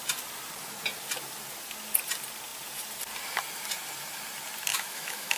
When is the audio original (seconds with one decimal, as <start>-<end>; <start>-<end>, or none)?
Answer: 0.0-4.7